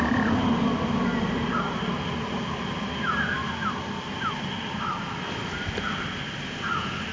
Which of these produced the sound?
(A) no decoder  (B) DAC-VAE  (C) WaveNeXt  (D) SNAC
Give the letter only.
A